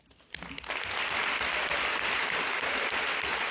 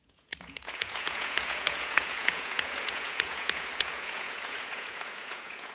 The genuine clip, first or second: first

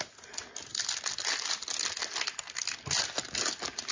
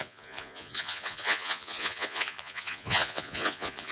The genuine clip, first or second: first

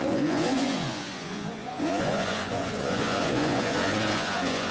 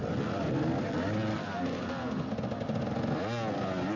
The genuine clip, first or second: second